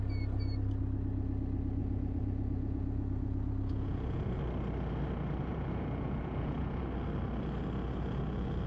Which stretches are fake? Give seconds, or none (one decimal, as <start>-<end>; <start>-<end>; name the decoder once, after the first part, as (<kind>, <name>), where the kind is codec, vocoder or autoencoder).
1.8-4.4 (vocoder, Vocos); 5.5-6.8